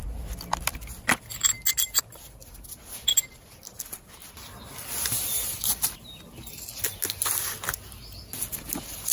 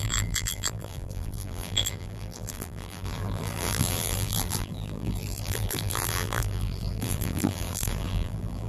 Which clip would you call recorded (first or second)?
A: first